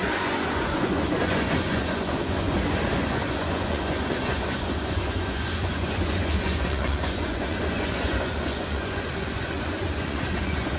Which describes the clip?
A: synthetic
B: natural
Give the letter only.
A